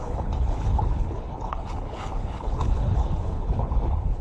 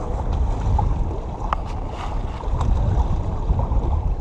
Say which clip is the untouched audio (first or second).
second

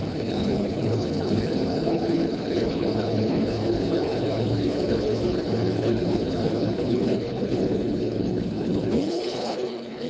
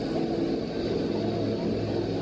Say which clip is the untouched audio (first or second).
second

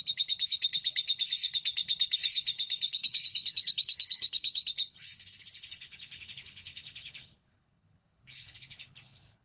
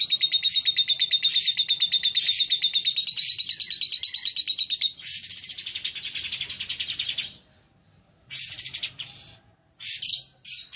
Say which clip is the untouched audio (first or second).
second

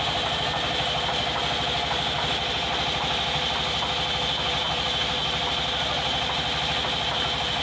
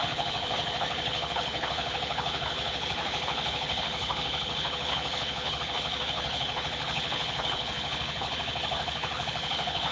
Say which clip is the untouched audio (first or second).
first